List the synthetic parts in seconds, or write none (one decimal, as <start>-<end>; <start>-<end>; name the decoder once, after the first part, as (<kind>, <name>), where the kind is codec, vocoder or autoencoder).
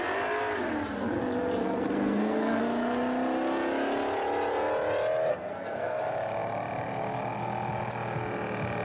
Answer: 1.6-2.6 (codec, SNAC); 5.3-6.0